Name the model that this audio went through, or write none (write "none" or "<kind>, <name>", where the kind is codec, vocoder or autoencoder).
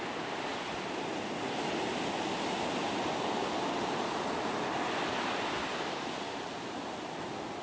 none